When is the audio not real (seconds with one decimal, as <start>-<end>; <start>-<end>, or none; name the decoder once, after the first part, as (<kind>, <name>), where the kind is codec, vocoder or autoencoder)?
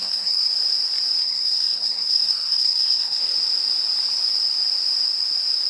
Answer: 0.0-0.5 (codec, SNAC); 1.2-3.2